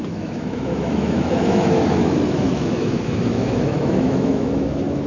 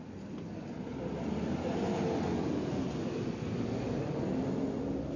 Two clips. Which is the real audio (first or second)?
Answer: second